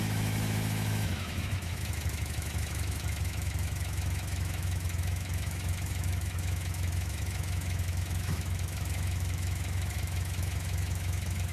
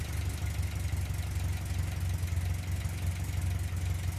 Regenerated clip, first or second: first